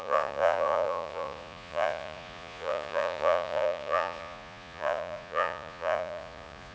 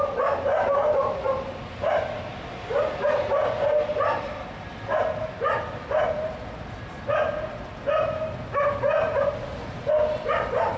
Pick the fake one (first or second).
first